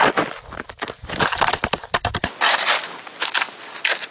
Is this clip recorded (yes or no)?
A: yes